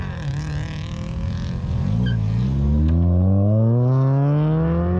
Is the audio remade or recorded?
recorded